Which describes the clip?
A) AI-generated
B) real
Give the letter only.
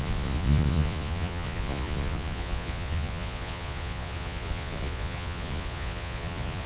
A